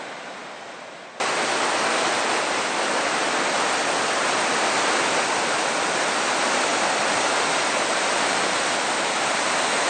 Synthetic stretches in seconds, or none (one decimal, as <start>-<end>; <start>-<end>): none